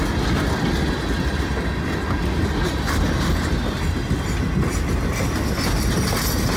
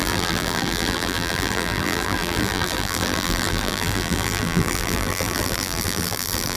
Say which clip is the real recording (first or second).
first